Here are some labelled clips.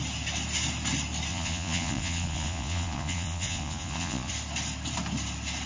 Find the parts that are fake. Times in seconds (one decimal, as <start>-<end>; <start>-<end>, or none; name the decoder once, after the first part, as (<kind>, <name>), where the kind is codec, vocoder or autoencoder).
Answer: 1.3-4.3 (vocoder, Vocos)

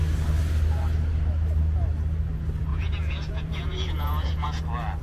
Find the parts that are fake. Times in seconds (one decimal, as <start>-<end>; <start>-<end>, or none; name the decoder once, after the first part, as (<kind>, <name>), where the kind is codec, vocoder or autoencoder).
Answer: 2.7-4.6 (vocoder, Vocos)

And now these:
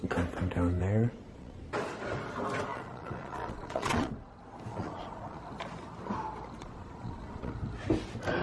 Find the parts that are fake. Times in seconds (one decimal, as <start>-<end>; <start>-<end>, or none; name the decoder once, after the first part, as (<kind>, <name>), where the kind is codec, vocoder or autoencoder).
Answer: 0.8-1.6 (vocoder, Vocos); 2.7-4.1; 4.7-5.4; 6.6-7.5